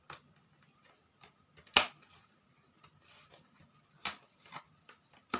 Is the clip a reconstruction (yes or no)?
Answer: no